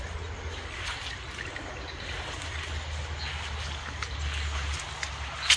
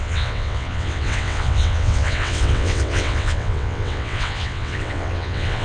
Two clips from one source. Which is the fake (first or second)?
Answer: second